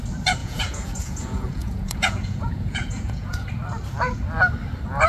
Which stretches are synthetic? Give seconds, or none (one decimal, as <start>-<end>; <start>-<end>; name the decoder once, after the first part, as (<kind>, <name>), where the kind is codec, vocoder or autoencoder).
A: 0.4-3.5 (vocoder, Vocos)